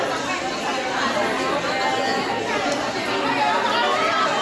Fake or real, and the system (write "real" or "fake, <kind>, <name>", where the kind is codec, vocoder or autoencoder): real